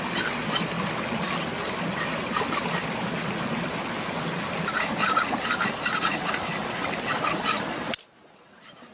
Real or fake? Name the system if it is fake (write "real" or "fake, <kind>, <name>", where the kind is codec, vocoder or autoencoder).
real